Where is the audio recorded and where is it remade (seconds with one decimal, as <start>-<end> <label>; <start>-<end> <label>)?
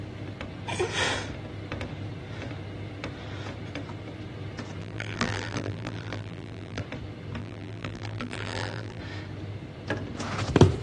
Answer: 0.0-4.8 recorded; 4.8-6.8 remade; 6.8-7.4 recorded; 7.4-9.0 remade; 9.0-10.8 recorded